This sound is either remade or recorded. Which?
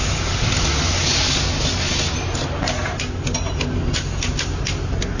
recorded